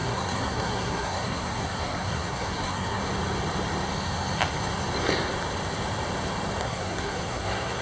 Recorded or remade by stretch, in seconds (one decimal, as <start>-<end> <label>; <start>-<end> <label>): 0.0-3.0 remade; 3.0-6.6 recorded; 6.6-7.8 remade